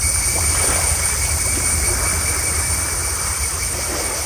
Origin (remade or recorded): recorded